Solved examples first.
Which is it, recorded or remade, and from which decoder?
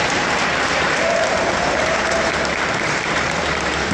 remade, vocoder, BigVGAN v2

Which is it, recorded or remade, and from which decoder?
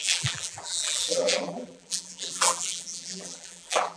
remade, vocoder, BigVGAN v2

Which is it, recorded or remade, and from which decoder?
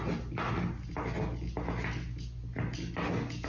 recorded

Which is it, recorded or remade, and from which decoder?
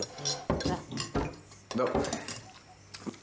recorded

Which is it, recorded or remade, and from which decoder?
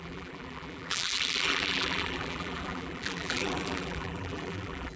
remade, vocoder, BigVGAN v2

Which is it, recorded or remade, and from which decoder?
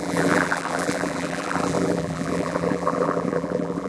remade, vocoder, BigVGAN v2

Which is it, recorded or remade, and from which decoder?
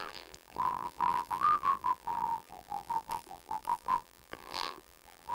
remade, vocoder, BigVGAN v2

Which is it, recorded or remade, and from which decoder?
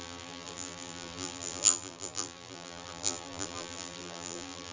remade, vocoder, BigVGAN v2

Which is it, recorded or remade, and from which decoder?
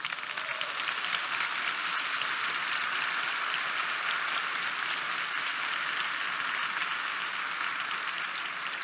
recorded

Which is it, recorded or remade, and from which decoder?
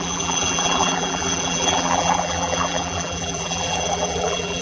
remade, vocoder, BigVGAN v2